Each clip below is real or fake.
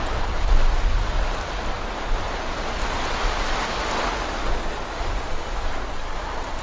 real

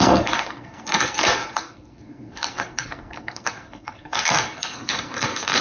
fake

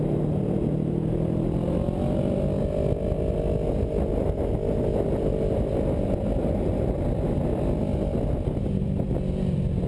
real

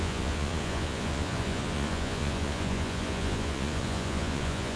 fake